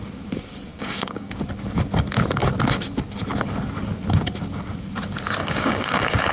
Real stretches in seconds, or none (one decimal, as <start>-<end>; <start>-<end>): 0.0-0.7; 1.3-5.4